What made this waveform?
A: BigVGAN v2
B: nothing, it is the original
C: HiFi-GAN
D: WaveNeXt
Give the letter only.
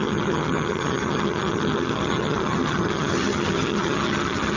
C